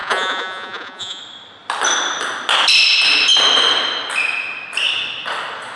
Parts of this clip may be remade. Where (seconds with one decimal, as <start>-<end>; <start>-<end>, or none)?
0.0-1.2